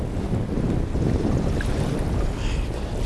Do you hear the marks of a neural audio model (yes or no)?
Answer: no